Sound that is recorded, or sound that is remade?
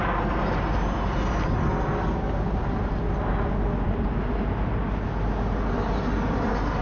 recorded